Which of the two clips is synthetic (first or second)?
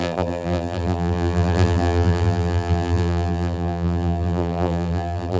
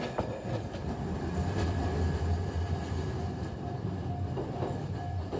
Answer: first